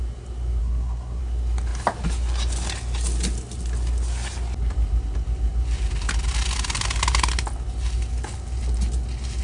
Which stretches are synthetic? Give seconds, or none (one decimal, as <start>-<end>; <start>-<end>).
0.6-1.2